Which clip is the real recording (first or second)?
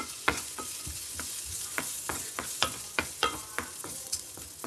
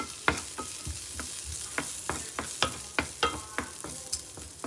second